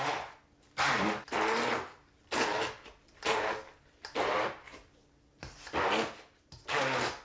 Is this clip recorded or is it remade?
recorded